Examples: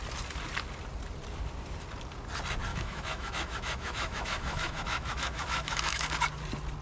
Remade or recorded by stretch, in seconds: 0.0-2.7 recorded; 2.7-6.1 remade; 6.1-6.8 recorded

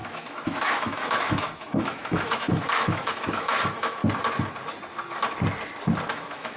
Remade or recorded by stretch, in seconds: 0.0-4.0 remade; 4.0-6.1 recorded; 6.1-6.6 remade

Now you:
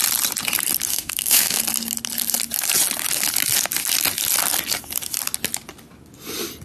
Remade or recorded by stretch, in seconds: 0.0-0.9 recorded; 0.9-1.6 remade; 1.6-6.6 recorded

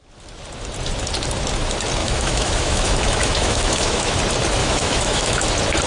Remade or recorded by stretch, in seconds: 0.0-2.0 recorded; 2.0-4.1 remade; 4.1-4.6 recorded; 4.6-5.5 remade; 5.5-5.9 recorded